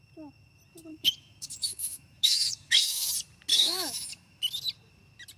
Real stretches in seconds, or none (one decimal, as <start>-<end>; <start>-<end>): 0.0-0.9; 3.1-3.5; 4.4-5.4